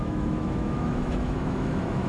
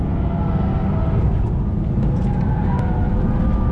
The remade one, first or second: first